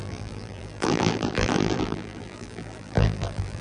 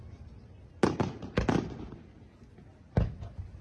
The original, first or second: second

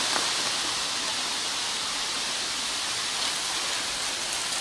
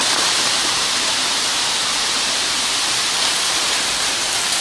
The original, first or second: first